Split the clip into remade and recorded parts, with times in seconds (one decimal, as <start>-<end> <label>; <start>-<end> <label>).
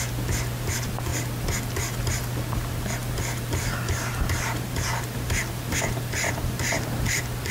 0.0-1.1 remade; 1.1-2.0 recorded; 2.0-7.5 remade